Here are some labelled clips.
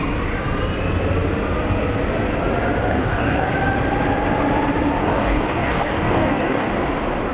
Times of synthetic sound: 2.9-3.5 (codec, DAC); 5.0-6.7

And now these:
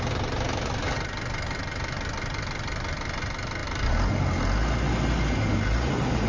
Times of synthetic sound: none

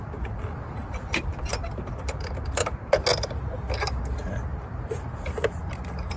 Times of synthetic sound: none